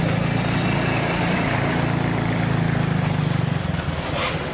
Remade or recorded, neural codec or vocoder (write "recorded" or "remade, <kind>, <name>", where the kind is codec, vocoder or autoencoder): recorded